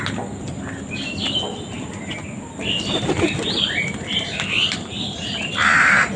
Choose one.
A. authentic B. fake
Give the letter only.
A